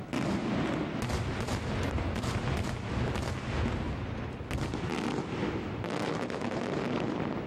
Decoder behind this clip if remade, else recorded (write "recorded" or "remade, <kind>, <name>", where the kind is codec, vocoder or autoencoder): recorded